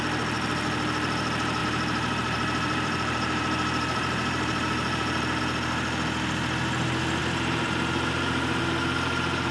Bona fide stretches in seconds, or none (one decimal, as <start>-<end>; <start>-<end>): 0.0-1.6; 5.4-7.2; 8.6-9.5